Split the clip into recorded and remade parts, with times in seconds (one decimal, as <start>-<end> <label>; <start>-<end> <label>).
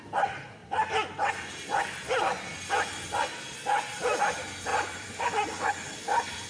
0.0-0.6 recorded; 0.6-1.5 remade; 1.5-4.7 recorded; 4.7-5.2 remade; 5.2-6.5 recorded